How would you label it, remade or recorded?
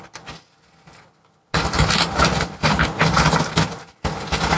recorded